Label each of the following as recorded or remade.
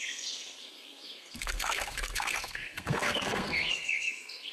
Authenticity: remade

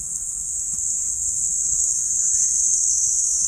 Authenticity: remade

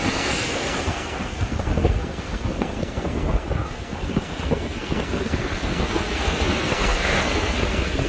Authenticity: remade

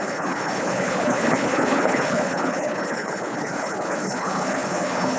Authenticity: remade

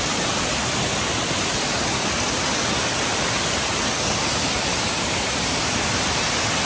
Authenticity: recorded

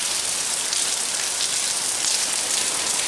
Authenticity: recorded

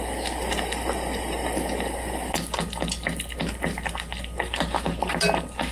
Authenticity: recorded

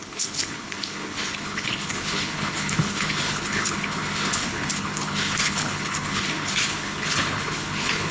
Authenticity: remade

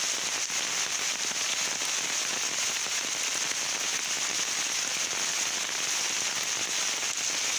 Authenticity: recorded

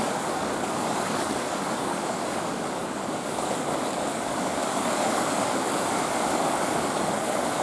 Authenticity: remade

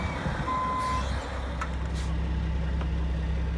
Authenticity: recorded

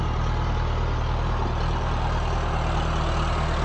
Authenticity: recorded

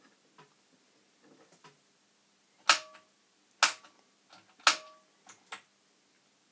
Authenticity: recorded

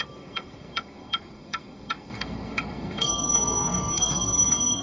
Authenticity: remade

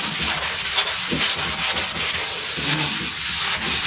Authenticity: recorded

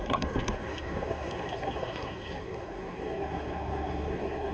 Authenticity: remade